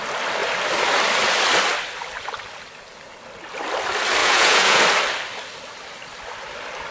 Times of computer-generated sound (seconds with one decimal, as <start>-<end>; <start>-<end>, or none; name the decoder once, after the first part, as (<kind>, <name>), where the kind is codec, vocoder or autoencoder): 4.2-4.8 (vocoder, Vocos)